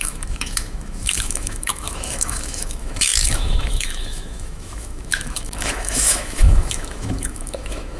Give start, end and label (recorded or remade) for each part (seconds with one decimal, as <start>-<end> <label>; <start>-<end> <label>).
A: 0.0-8.0 remade